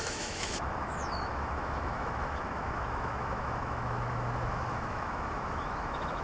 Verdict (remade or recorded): remade